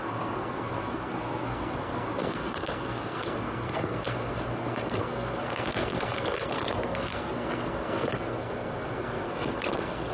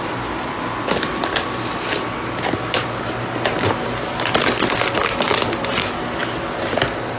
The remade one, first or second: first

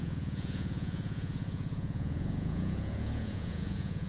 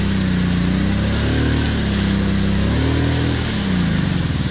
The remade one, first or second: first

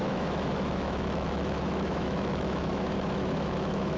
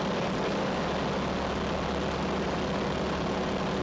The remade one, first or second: first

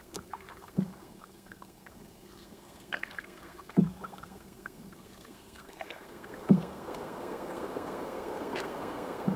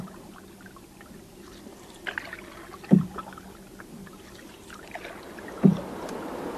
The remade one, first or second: first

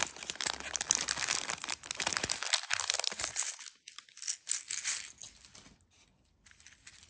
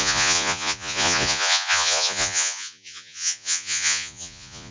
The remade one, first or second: second